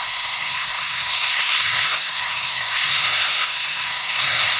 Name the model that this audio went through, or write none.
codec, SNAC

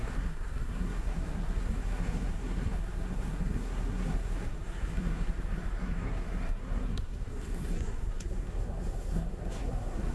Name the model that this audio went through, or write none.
codec, SNAC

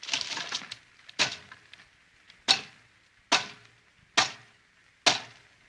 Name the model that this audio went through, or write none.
none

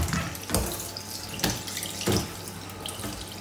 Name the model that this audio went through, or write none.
none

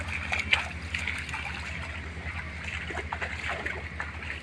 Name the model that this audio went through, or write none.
none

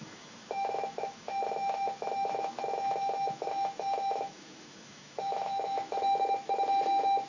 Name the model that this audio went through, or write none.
autoencoder, DAC-VAE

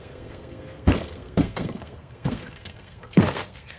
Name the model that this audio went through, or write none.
codec, SNAC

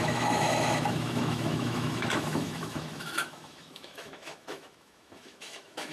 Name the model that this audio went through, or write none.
autoencoder, DAC-VAE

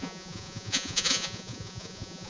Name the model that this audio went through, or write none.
vocoder, Vocos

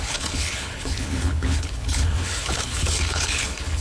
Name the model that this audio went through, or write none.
codec, HILCodec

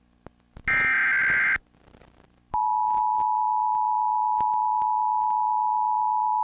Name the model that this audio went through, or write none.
none